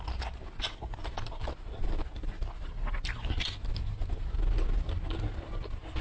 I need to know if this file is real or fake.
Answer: real